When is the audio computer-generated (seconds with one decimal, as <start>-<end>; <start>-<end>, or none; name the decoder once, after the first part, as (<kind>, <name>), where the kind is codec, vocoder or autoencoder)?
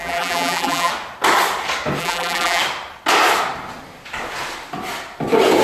0.0-0.9 (vocoder, BigVGAN v2); 2.0-2.6